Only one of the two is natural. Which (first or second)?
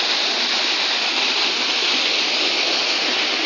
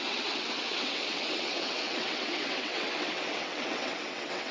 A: first